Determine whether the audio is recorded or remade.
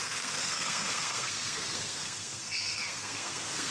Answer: remade